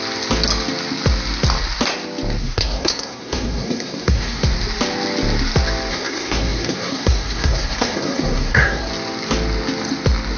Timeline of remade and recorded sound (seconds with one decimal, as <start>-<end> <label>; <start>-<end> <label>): 0.0-2.4 recorded; 2.4-4.4 remade; 4.4-5.9 recorded; 5.9-8.9 remade; 8.9-10.4 recorded

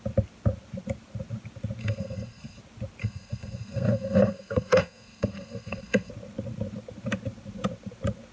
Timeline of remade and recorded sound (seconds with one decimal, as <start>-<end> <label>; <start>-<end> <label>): 0.0-1.8 recorded; 1.8-2.6 remade; 2.6-3.0 recorded; 3.0-6.1 remade; 6.1-8.3 recorded

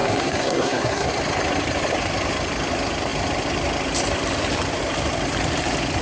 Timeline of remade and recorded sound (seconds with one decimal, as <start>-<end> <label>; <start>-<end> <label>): 0.0-1.1 remade; 1.1-6.0 recorded